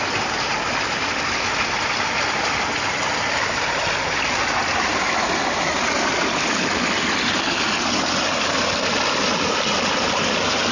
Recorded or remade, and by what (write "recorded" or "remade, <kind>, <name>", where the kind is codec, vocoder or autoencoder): recorded